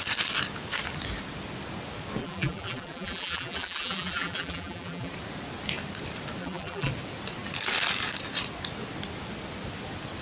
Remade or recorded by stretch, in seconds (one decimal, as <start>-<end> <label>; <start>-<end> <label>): 0.0-2.2 recorded; 2.2-5.1 remade; 5.1-6.4 recorded; 6.4-6.9 remade; 6.9-10.2 recorded